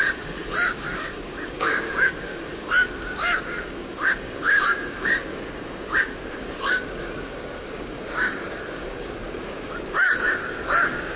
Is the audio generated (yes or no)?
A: yes